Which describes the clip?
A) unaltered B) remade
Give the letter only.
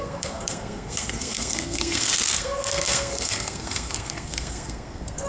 B